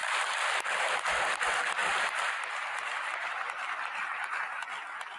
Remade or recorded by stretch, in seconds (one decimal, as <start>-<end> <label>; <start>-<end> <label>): 0.0-1.3 remade; 1.3-1.8 recorded; 1.8-5.2 remade